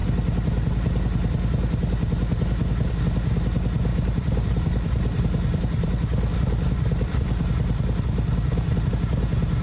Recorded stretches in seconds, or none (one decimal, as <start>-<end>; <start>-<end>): 0.0-3.9; 8.9-9.6